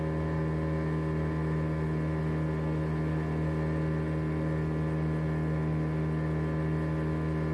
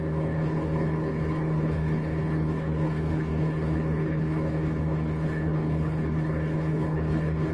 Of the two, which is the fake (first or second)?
second